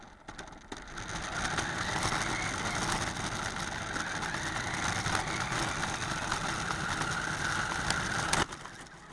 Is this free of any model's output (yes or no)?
yes